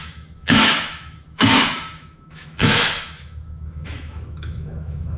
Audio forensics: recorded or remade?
remade